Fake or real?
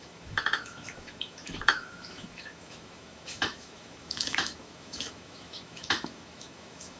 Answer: fake